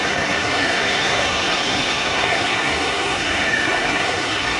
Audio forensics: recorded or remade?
remade